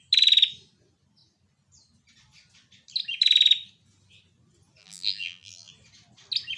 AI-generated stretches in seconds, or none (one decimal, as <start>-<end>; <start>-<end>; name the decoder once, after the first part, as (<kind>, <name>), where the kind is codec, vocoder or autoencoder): 4.8-5.7 (vocoder, BigVGAN v2)